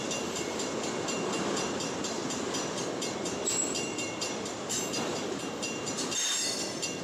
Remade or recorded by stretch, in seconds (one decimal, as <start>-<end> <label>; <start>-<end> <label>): 0.0-7.0 remade